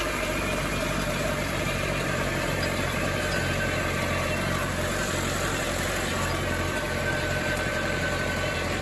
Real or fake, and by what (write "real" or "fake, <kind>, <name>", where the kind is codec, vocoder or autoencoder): fake, vocoder, BigVGAN v2